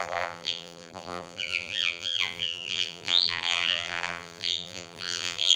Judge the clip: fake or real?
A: fake